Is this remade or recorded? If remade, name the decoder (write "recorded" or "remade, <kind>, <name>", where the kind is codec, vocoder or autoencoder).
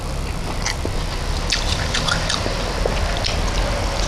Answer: recorded